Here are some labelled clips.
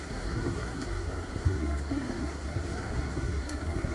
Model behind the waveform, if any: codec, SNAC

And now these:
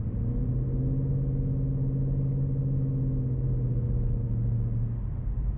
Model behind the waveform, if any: none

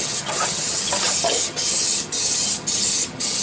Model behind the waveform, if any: vocoder, HiFi-GAN